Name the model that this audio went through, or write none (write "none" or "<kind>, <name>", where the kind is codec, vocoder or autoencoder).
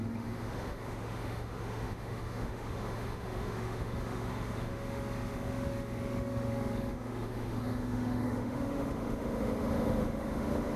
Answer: autoencoder, DAC-VAE